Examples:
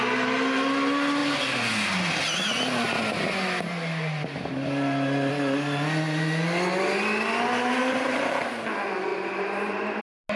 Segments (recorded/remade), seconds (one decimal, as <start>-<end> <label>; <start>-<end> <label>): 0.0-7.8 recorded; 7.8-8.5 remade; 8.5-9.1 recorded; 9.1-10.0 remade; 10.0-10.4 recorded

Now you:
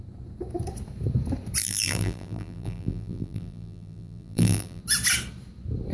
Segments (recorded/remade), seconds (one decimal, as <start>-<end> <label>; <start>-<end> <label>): 0.0-1.6 recorded; 1.6-4.8 remade; 4.8-5.9 recorded

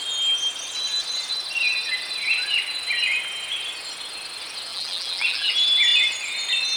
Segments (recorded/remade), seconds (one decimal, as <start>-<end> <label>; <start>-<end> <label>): 0.0-4.7 recorded; 4.7-5.5 remade; 5.5-6.8 recorded

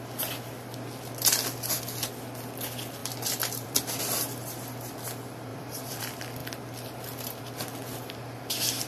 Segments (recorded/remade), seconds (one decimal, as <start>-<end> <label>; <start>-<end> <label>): 0.0-3.0 recorded; 3.0-4.0 remade; 4.0-5.5 recorded; 5.5-6.0 remade; 6.0-8.9 recorded

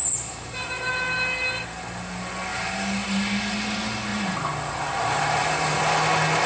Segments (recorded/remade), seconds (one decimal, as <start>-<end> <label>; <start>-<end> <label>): 0.0-0.9 remade; 0.9-2.5 recorded; 2.5-3.3 remade; 3.3-4.1 recorded; 4.1-5.8 remade; 5.8-6.5 recorded